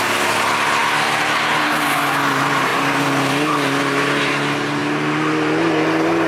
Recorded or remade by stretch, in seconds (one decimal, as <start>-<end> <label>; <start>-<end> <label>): 0.0-6.3 recorded